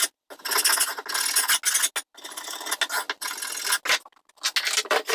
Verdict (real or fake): real